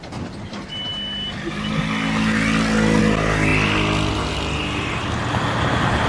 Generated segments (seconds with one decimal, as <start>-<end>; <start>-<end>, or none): none